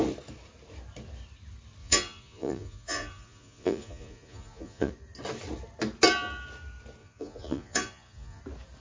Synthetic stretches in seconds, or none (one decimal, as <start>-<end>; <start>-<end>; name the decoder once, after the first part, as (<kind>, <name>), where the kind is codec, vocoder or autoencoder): 1.8-4.9 (vocoder, Vocos); 7.0-8.4